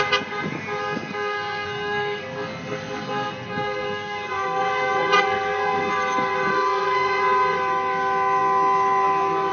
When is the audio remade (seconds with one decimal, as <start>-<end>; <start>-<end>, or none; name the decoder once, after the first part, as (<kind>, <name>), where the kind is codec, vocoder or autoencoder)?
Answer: 0.8-5.9 (codec, SNAC); 6.5-7.2